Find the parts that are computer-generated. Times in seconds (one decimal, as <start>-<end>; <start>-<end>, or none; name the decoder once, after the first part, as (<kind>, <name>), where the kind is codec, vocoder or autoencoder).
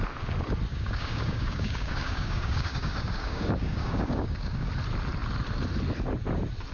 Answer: 0.7-4.7 (codec, DAC)